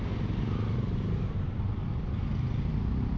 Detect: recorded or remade recorded